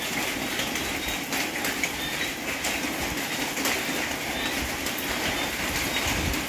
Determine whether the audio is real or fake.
real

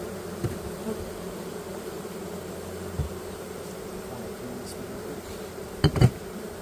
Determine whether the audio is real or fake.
fake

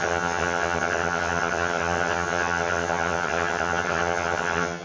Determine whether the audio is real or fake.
fake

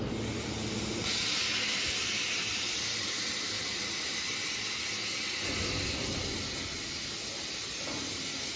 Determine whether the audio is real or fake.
real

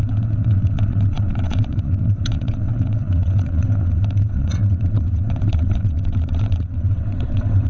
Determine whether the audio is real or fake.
fake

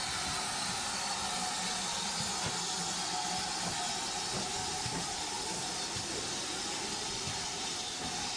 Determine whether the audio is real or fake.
real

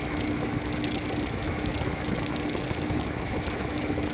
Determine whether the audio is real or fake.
fake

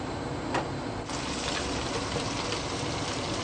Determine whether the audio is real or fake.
real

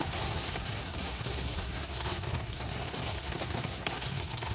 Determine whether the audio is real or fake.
fake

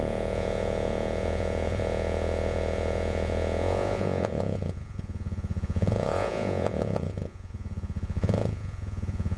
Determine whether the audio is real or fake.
fake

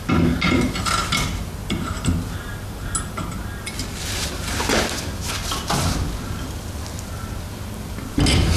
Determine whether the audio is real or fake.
real